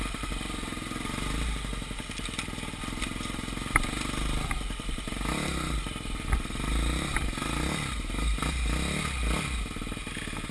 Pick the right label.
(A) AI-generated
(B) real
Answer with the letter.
B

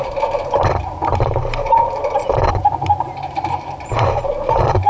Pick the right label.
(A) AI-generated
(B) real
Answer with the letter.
A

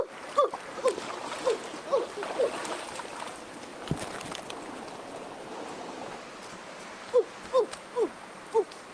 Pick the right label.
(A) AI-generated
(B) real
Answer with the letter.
B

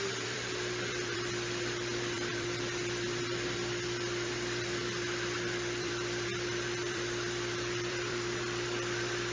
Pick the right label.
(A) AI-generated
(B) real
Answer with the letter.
A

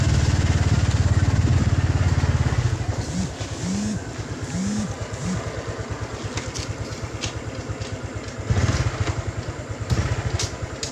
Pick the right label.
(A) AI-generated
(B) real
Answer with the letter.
B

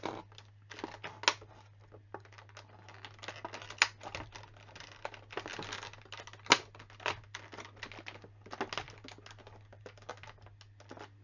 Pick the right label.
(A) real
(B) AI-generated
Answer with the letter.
A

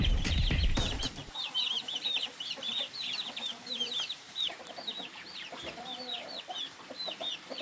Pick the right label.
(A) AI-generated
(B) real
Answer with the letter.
A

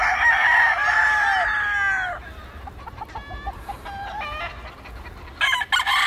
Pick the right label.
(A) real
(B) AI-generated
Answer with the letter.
A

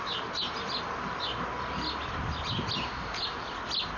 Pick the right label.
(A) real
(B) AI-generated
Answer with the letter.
A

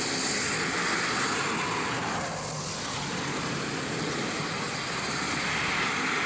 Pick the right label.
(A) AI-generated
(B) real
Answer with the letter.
B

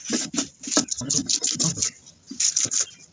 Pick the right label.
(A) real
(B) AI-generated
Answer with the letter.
A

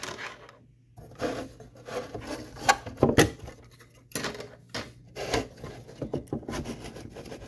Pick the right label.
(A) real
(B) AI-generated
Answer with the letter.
A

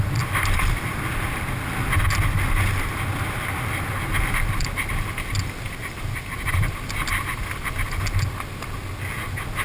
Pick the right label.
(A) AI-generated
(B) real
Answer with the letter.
B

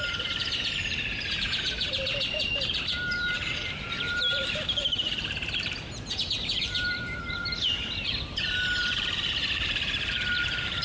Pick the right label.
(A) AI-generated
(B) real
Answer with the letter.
A